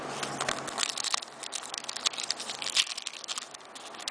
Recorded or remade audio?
recorded